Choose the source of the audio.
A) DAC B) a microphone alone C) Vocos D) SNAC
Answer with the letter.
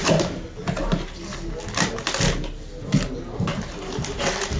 B